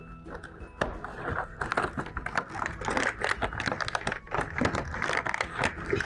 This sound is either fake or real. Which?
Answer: real